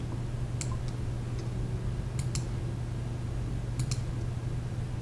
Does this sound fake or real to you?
real